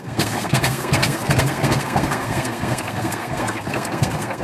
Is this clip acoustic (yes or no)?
no